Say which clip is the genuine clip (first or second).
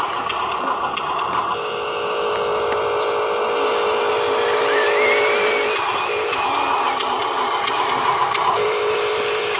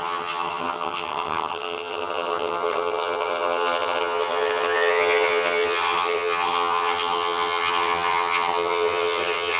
first